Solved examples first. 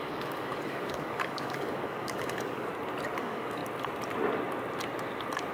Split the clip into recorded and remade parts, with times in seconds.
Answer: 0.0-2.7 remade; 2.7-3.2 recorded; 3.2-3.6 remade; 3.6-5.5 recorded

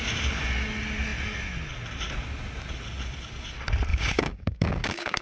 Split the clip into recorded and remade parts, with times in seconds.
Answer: 0.0-3.9 recorded; 3.9-5.2 remade

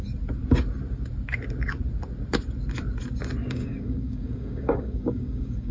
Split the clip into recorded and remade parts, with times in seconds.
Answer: 0.0-3.4 recorded; 3.4-5.7 remade

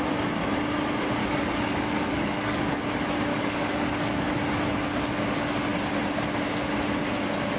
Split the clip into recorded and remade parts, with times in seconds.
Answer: 0.0-1.2 recorded; 1.2-2.7 remade; 2.7-3.3 recorded; 3.3-4.3 remade; 4.3-7.6 recorded